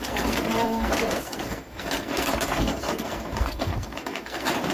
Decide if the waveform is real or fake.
fake